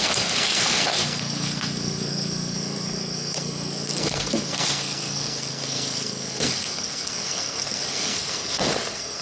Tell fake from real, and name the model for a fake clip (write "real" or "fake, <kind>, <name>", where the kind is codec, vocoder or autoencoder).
fake, codec, SNAC